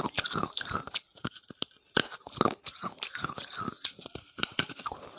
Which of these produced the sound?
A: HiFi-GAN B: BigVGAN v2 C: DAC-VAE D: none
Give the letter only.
D